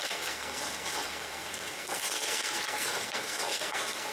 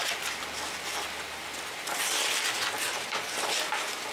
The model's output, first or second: first